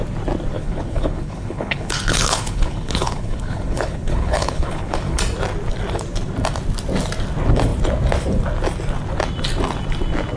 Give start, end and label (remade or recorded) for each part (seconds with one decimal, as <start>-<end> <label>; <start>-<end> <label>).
0.0-0.5 recorded; 0.5-5.2 remade; 5.2-10.4 recorded